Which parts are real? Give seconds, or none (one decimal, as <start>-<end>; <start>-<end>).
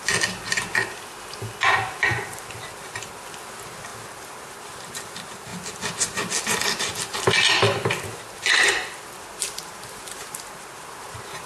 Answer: 0.0-11.5